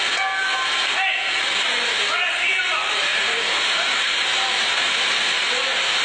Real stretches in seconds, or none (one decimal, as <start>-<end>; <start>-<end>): 0.0-2.5; 5.5-6.0

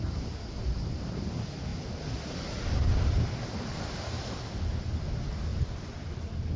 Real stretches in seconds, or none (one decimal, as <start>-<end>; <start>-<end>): 0.0-1.7; 4.4-5.5; 6.1-6.6

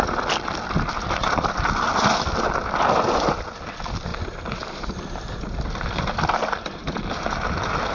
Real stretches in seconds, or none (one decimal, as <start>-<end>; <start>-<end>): 0.0-4.1; 5.4-6.8; 7.3-7.9